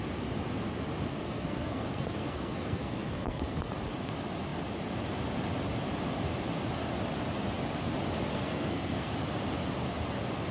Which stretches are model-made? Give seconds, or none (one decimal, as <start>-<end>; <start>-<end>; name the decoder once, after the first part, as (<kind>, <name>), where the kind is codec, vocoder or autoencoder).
1.1-3.6 (codec, SNAC); 8.3-9.1